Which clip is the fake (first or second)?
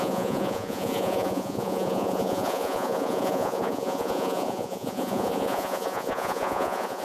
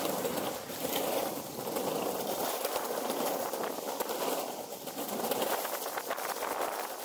first